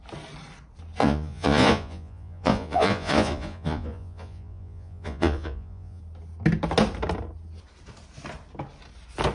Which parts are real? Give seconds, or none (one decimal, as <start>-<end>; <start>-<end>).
0.0-1.0; 6.0-9.3